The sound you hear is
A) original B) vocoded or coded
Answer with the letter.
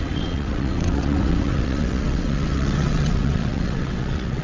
B